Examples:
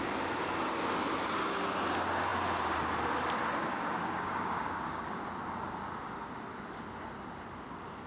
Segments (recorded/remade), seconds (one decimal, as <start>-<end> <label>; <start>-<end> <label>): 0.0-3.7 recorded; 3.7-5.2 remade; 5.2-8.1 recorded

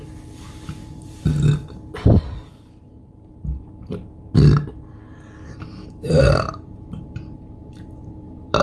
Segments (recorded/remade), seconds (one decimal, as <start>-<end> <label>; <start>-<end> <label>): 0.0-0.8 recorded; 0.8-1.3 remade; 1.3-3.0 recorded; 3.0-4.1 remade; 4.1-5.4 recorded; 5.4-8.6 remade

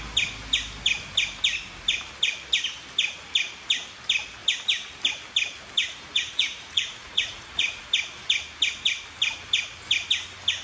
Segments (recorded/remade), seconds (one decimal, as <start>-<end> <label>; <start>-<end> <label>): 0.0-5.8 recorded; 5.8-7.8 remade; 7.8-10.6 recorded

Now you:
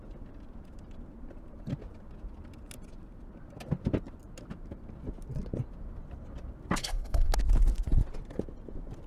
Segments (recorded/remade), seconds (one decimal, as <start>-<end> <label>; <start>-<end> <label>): 0.0-6.8 recorded; 6.8-7.3 remade; 7.3-9.1 recorded

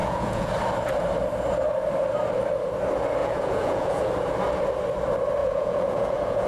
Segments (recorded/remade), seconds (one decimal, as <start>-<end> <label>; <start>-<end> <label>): 0.0-0.5 remade; 0.5-3.2 recorded; 3.2-4.1 remade; 4.1-5.4 recorded; 5.4-6.5 remade

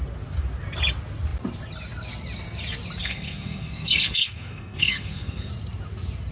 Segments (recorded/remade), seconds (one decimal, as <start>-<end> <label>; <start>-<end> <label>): 0.0-3.0 recorded; 3.0-5.5 remade; 5.5-6.3 recorded